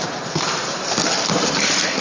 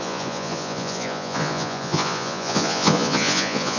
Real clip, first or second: first